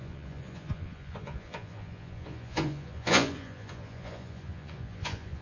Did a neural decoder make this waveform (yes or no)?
yes